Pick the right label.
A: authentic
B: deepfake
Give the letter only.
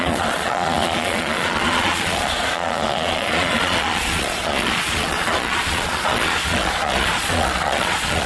B